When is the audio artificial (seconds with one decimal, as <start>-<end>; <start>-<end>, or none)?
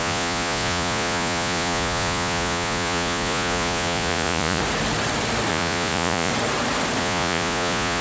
0.0-4.6; 5.5-6.3; 7.0-8.0